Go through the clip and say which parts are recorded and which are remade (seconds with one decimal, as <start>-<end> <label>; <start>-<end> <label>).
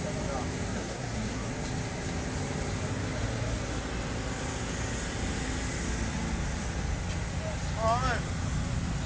0.0-0.7 recorded; 0.7-1.5 remade; 1.5-9.1 recorded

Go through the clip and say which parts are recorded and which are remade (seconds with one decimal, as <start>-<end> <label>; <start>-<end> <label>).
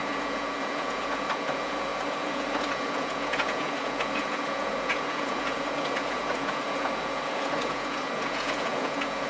0.0-9.3 remade